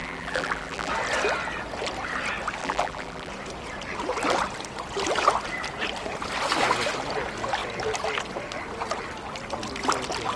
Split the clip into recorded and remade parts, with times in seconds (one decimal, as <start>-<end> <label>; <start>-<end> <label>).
0.0-0.9 remade; 0.9-2.6 recorded; 2.6-3.3 remade; 3.3-10.4 recorded